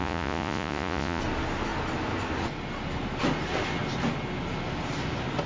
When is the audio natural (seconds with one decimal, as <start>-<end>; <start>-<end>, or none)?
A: 1.2-5.5